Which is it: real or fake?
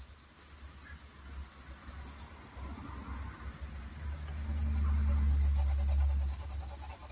real